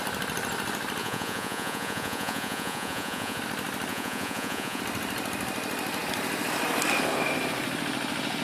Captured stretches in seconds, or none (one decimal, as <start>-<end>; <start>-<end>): 0.0-1.0; 3.4-3.9; 4.8-8.4